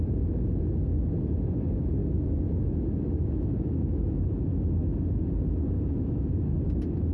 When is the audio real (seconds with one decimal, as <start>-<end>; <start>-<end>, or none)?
0.0-2.0; 4.4-7.1